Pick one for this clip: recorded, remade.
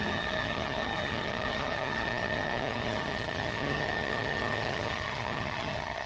remade